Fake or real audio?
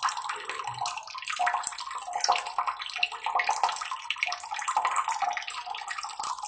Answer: real